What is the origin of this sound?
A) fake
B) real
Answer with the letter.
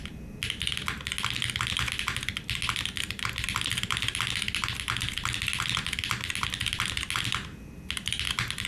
B